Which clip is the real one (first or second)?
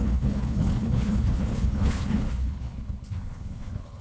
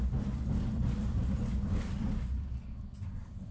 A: second